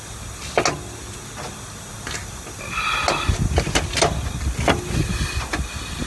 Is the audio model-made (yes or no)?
no